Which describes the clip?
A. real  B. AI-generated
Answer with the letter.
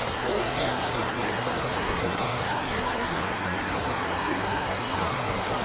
B